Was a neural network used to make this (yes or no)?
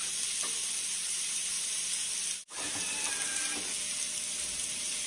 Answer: no